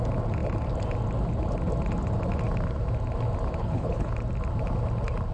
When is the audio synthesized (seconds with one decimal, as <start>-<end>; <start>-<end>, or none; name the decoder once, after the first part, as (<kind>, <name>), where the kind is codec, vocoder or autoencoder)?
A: 3.6-4.1 (codec, HILCodec)